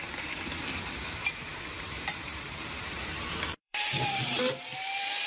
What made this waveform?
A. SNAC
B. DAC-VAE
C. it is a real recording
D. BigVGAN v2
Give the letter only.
D